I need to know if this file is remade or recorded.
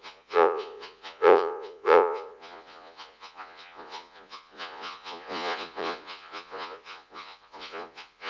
remade